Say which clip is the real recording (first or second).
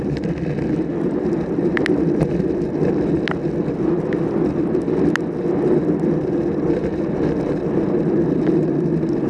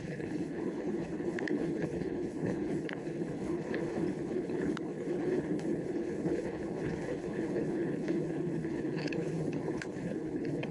first